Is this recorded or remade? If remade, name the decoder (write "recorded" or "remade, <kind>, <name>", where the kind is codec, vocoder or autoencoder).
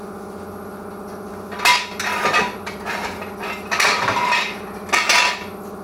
recorded